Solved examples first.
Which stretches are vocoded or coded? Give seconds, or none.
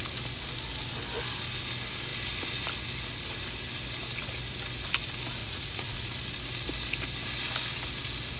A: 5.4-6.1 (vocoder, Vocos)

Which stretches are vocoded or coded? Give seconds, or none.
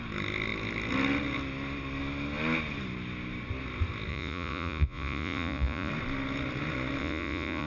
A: 4.1-5.9 (vocoder, Vocos); 7.0-7.7